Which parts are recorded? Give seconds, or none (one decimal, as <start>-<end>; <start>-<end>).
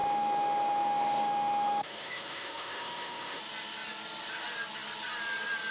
3.4-5.7